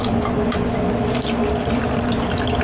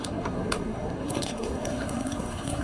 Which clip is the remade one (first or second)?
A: second